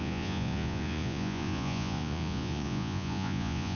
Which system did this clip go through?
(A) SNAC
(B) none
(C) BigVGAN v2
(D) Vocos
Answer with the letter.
D